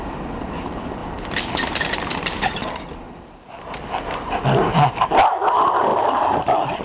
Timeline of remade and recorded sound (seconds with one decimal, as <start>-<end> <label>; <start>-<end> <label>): 0.0-1.0 recorded; 1.0-4.3 remade; 4.3-5.9 recorded; 5.9-6.8 remade